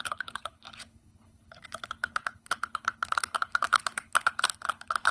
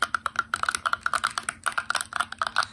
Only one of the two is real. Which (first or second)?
second